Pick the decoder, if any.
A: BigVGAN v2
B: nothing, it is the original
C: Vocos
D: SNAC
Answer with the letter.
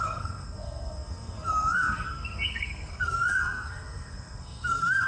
D